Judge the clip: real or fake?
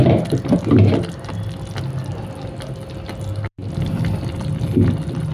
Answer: real